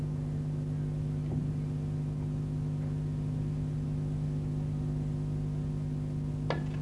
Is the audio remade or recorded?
recorded